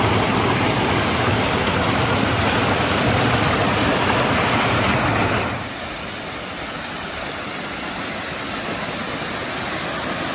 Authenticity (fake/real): real